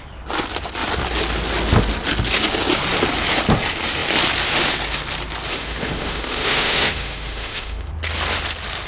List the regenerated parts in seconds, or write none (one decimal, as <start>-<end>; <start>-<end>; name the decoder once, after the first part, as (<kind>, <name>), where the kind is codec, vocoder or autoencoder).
5.5-7.9 (autoencoder, DAC-VAE)